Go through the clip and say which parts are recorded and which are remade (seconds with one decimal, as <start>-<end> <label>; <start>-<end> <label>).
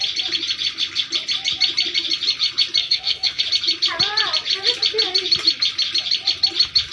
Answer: 0.0-2.8 recorded; 2.8-3.4 remade; 3.4-6.9 recorded